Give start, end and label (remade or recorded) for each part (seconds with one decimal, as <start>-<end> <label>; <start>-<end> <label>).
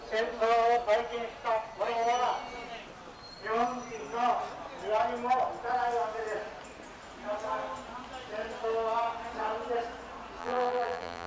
0.0-10.4 recorded; 10.4-11.3 remade